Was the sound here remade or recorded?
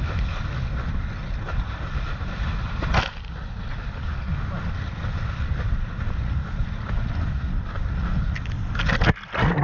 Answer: recorded